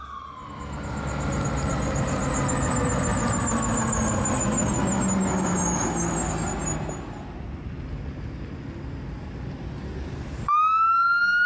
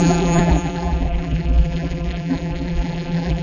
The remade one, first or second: second